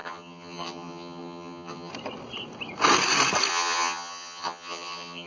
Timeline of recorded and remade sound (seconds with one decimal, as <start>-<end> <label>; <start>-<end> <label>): 0.0-1.9 remade; 1.9-3.5 recorded; 3.5-5.3 remade

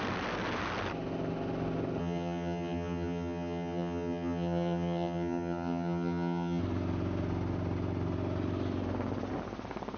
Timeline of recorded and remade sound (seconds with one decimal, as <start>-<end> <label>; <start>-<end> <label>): 0.0-2.0 recorded; 2.0-6.6 remade; 6.6-10.0 recorded